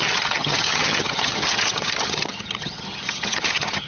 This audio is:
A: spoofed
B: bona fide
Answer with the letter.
A